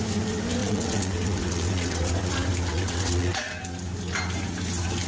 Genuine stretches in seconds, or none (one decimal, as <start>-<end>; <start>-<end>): 0.0-0.6; 2.3-2.7; 3.5-5.1